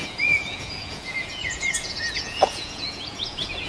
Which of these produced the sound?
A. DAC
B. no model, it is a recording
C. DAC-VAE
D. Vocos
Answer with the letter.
D